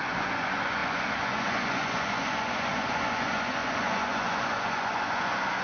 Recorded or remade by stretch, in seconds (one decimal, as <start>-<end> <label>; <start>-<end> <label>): 0.0-5.6 remade

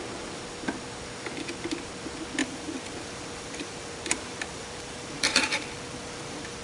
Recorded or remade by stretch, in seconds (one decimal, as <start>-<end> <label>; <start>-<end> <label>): 0.0-2.4 recorded; 2.4-6.6 remade

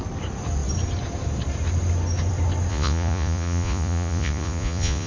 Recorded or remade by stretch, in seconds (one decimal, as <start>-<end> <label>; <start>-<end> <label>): 0.0-2.7 recorded; 2.7-5.1 remade